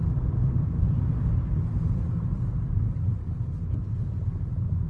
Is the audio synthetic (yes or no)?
yes